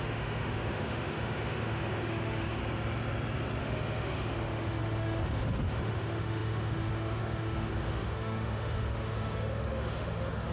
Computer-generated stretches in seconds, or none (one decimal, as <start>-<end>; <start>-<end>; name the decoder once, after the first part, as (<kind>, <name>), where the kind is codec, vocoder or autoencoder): 0.0-2.6 (autoencoder, DAC-VAE); 3.6-10.5

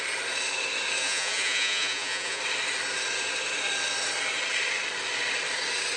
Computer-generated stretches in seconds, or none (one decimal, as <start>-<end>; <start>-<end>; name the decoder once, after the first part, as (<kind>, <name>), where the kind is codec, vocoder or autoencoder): 1.0-2.4 (vocoder, Vocos)

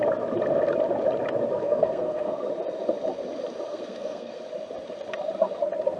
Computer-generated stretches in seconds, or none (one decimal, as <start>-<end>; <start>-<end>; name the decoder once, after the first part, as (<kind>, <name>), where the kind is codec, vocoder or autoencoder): 1.6-2.4 (codec, SNAC); 3.7-4.4

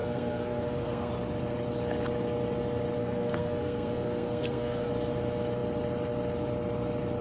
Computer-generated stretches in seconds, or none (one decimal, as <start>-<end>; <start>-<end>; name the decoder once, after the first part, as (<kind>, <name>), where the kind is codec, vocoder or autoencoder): 0.0-1.1 (codec, SNAC); 3.0-4.9

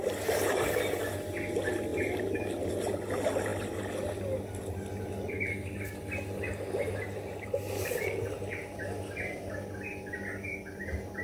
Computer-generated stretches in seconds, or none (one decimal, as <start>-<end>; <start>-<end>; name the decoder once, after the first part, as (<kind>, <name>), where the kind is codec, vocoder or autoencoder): none

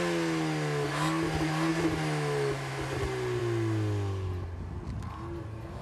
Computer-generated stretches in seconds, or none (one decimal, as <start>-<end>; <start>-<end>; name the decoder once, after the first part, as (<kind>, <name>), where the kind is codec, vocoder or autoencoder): none

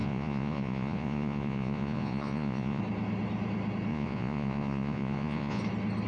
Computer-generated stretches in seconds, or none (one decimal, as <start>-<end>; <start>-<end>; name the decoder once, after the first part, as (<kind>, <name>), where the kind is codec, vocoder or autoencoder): 0.0-2.8 (vocoder, Vocos); 3.9-5.6

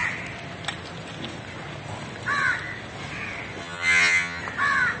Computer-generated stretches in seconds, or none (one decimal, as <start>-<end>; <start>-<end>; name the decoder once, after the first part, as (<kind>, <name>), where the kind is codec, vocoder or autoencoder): 3.6-4.4 (vocoder, HiFi-GAN)